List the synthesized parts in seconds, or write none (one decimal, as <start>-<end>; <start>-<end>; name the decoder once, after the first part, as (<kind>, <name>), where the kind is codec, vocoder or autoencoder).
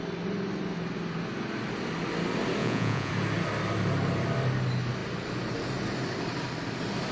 2.6-3.1 (vocoder, Vocos)